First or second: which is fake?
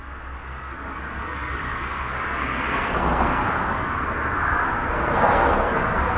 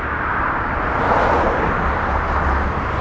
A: first